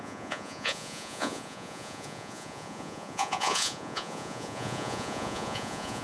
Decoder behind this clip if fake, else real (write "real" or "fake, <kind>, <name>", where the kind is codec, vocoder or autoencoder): fake, vocoder, Vocos